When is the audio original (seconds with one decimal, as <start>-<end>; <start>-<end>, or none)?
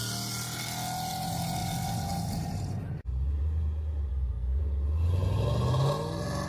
0.0-4.1; 4.6-6.5